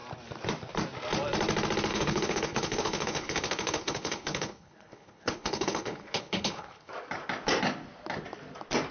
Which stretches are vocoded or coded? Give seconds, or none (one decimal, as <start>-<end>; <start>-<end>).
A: 1.9-6.9